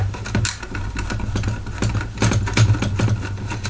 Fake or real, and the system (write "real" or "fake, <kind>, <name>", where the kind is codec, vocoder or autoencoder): real